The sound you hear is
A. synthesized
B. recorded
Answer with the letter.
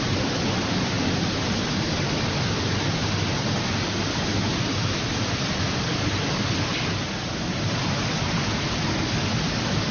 B